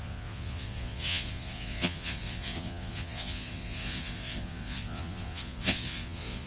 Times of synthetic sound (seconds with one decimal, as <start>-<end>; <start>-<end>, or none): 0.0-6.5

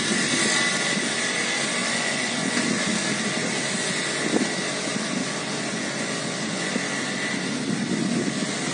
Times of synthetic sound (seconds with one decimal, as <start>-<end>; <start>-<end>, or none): 1.8-2.5; 5.2-6.7

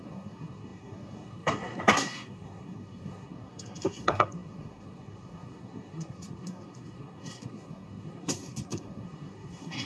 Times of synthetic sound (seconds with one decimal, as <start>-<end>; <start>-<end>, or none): 0.0-9.9

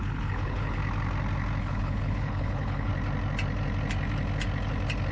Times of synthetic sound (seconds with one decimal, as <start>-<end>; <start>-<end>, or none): 0.0-0.8; 1.6-2.9